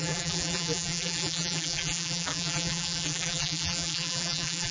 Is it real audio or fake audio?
fake